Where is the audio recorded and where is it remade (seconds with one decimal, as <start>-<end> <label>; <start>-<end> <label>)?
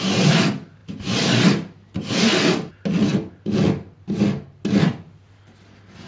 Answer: 0.0-6.1 recorded